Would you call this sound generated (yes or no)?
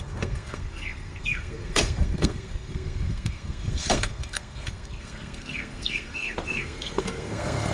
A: yes